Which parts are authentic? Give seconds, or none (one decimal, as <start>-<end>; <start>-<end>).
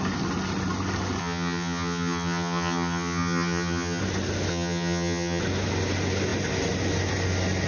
0.0-1.2; 4.0-4.5; 5.4-7.7